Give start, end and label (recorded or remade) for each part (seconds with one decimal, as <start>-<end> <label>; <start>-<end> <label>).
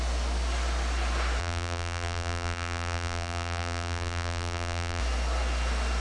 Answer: 0.0-1.4 recorded; 1.4-5.0 remade; 5.0-6.0 recorded